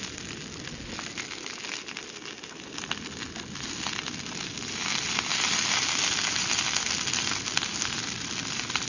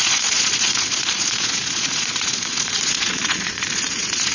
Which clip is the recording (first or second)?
first